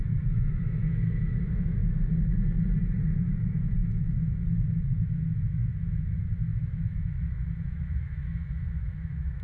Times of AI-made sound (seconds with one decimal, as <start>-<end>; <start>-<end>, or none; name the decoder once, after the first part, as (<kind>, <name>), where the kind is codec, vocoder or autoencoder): 0.0-1.8 (autoencoder, DAC-VAE); 3.1-9.4